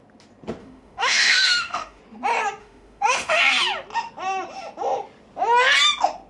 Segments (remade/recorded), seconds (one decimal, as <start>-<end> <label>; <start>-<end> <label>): 0.0-0.6 recorded; 0.6-2.0 remade; 2.0-2.6 recorded; 2.6-3.4 remade; 3.4-6.3 recorded